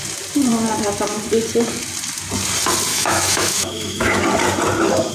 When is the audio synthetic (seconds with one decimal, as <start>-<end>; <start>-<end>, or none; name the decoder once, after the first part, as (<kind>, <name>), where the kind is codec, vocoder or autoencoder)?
2.9-4.2 (autoencoder, DAC-VAE)